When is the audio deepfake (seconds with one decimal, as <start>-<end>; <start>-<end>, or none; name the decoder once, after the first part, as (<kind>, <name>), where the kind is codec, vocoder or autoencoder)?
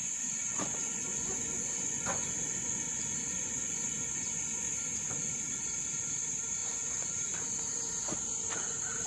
0.0-4.7 (vocoder, Vocos); 6.6-7.2